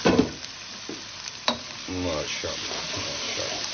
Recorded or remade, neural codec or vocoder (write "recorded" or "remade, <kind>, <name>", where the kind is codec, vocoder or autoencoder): recorded